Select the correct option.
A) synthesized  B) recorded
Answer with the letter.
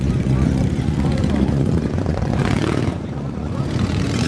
A